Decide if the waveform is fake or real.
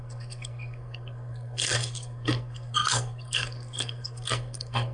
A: fake